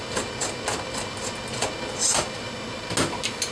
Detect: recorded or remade recorded